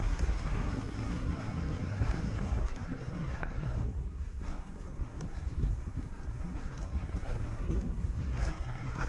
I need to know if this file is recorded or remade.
remade